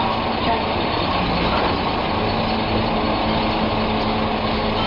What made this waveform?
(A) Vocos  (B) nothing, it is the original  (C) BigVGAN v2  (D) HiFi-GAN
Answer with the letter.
B